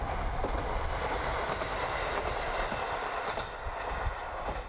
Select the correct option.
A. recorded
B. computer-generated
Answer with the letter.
A